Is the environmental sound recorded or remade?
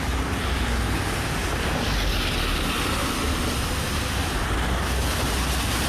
recorded